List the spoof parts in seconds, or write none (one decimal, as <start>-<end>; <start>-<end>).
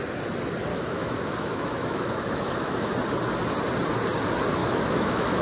0.7-2.9; 4.6-5.4